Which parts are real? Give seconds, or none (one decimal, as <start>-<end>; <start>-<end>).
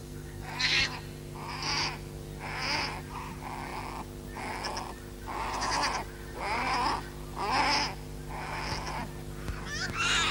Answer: 0.8-10.3